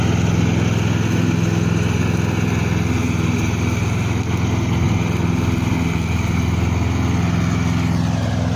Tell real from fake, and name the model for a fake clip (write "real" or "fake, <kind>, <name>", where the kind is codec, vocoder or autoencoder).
real